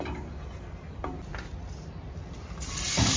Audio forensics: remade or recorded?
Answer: recorded